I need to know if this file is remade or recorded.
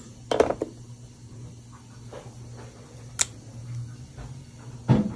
recorded